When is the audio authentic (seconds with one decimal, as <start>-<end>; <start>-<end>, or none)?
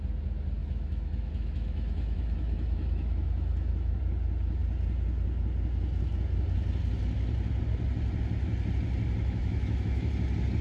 0.0-0.6; 4.0-9.4; 10.1-10.6